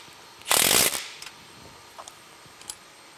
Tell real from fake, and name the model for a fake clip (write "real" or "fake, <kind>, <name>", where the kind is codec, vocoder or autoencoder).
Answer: real